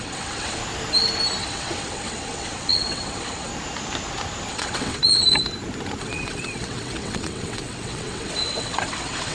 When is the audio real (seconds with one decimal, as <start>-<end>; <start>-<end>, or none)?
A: 0.6-1.4; 3.5-4.5; 5.0-6.0